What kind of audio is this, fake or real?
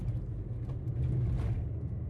real